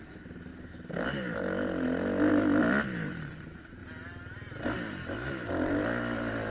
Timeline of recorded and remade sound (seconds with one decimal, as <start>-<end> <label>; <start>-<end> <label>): 0.0-6.5 recorded